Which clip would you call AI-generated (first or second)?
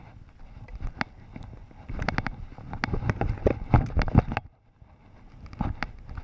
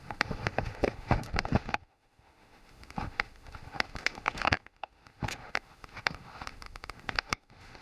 second